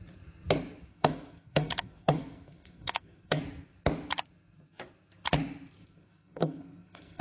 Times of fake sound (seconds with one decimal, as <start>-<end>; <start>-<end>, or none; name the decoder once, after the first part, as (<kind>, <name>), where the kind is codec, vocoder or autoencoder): 0.9-3.4 (codec, SNAC); 5.8-7.2